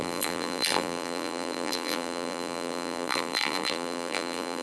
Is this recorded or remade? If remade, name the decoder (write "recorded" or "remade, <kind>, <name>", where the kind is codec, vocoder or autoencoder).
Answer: remade, vocoder, BigVGAN v2